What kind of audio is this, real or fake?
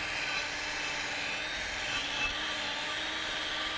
real